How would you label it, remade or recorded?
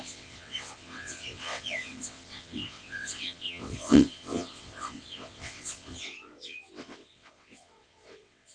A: remade